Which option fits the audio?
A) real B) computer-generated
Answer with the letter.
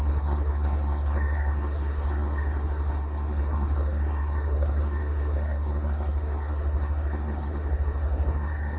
B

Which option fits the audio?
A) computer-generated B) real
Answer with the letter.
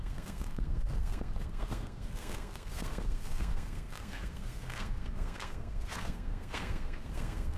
A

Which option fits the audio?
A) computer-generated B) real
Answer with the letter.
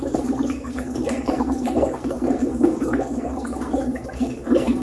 A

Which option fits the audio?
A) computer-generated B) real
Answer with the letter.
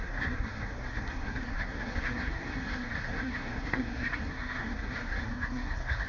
A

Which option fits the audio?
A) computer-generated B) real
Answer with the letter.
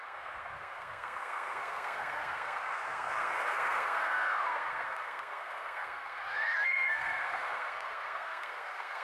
A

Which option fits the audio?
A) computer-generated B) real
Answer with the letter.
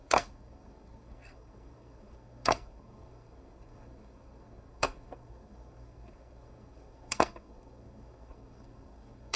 A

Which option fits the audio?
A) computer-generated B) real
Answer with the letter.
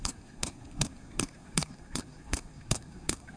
A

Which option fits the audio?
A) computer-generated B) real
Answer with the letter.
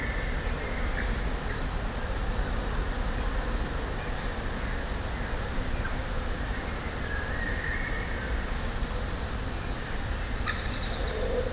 B